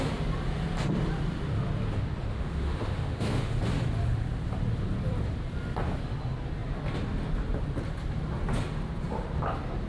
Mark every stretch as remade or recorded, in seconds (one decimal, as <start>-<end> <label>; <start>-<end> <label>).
0.0-2.3 recorded; 2.3-3.6 remade; 3.6-9.9 recorded